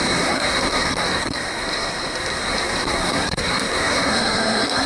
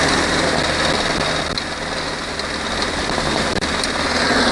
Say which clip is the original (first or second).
second